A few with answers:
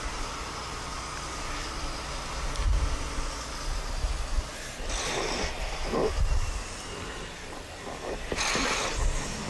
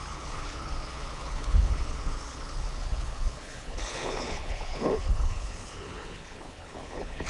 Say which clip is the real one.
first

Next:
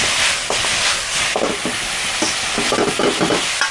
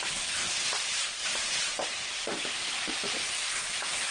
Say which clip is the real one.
first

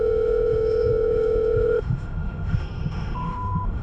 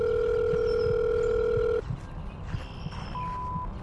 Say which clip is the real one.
second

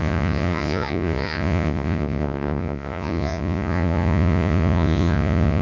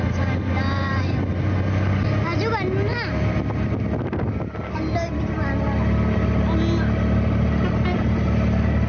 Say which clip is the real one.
second